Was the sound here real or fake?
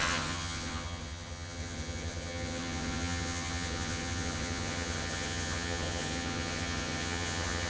fake